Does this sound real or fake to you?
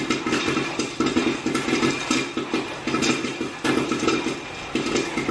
real